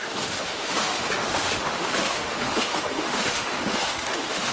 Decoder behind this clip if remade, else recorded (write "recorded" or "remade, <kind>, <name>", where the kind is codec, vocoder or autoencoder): remade, autoencoder, DAC-VAE